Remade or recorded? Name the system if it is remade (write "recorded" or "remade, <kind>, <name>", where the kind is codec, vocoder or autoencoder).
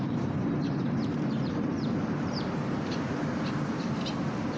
remade, vocoder, BigVGAN v2